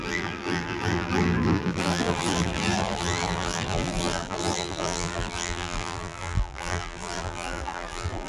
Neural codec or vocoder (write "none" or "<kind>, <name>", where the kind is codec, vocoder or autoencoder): vocoder, BigVGAN v2